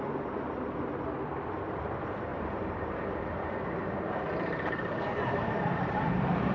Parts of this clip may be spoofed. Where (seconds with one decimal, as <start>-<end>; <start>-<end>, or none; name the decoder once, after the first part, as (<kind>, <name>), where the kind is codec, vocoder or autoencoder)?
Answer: 2.3-6.5 (vocoder, BigVGAN v2)